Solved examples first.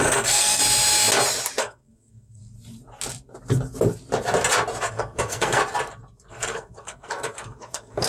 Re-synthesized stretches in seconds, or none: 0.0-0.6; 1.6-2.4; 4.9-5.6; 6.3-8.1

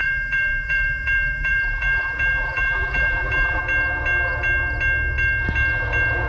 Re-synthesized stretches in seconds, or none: 0.0-3.6

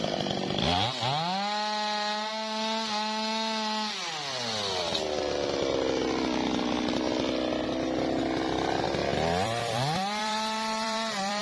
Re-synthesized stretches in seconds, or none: 9.1-11.4

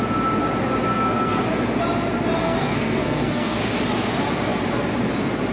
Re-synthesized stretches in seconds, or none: 0.9-1.4; 2.4-3.6

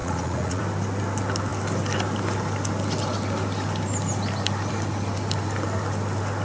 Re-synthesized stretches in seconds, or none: 0.0-0.6

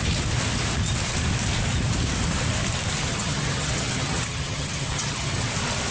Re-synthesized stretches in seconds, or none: 3.1-5.5